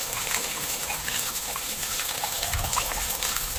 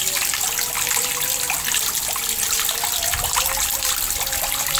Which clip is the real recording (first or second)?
second